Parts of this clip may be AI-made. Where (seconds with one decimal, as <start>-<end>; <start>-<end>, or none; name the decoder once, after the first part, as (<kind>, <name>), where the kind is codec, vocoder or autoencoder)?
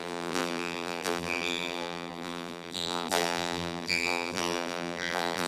0.0-5.5 (vocoder, BigVGAN v2)